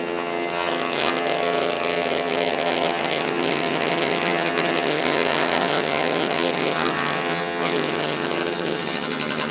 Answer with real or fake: fake